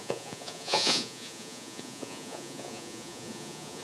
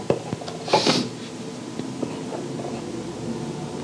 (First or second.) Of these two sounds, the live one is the second